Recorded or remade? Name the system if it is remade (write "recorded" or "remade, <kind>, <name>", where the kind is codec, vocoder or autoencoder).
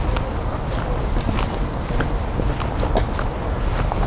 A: recorded